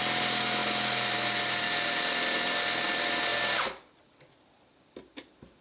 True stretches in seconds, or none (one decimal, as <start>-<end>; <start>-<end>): 0.0-5.6